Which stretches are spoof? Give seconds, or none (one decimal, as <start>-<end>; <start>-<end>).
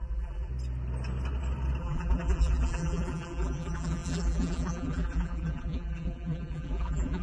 0.0-0.5; 1.8-7.2